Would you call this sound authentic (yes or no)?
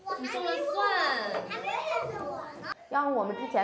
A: yes